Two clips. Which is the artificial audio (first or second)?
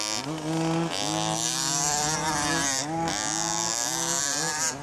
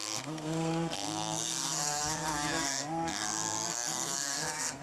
second